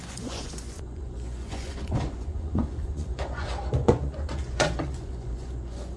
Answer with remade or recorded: remade